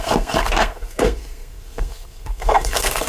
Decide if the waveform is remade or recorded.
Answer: remade